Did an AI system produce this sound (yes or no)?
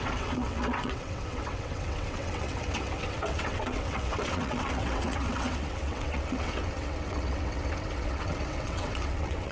yes